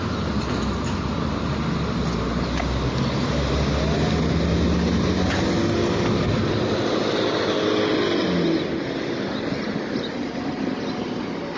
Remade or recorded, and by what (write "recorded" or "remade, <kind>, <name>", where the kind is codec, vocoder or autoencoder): recorded